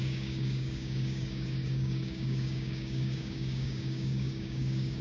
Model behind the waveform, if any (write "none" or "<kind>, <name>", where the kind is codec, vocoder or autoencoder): codec, DAC